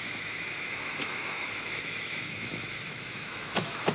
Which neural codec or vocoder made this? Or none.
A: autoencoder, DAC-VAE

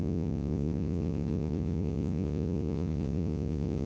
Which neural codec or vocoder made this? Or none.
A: vocoder, Vocos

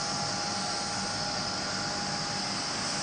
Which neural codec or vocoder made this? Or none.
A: none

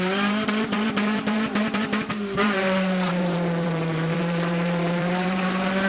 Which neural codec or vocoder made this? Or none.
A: vocoder, BigVGAN v2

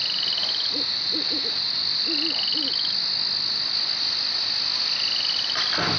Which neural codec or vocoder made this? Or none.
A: none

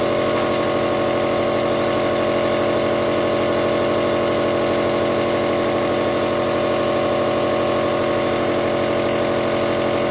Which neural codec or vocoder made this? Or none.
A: none